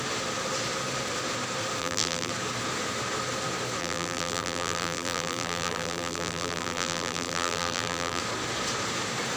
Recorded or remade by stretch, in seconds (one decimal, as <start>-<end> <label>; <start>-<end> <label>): 0.0-1.8 recorded; 1.8-2.3 remade; 2.3-3.8 recorded; 3.8-8.2 remade; 8.2-9.4 recorded